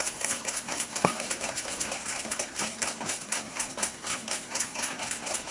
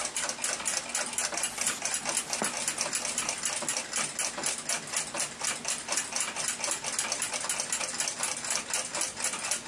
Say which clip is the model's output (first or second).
first